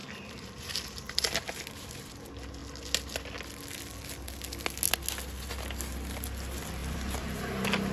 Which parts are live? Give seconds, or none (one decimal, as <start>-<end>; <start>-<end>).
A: 2.2-6.8; 7.4-7.9